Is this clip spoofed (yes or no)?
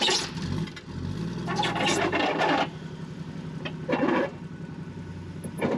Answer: no